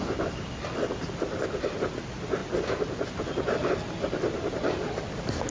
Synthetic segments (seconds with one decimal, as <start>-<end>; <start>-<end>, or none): none